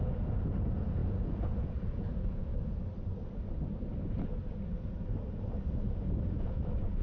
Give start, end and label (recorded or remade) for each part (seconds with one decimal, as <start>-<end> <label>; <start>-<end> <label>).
0.0-2.5 remade; 2.5-6.4 recorded; 6.4-7.0 remade